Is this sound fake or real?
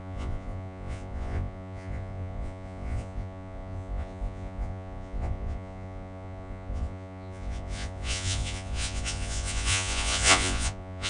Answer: fake